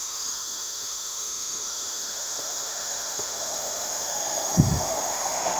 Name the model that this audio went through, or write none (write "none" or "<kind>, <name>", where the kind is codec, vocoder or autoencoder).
autoencoder, DAC-VAE